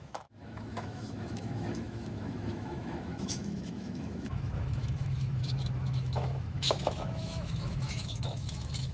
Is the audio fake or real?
fake